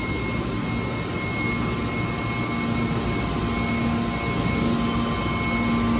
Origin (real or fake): real